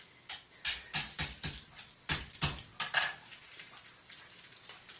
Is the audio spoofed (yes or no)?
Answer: no